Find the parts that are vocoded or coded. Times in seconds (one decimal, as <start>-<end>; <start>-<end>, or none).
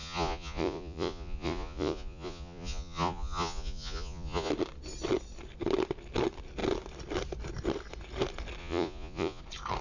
0.0-4.5; 8.6-9.4